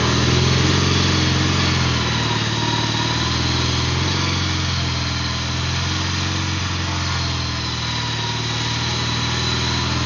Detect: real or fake real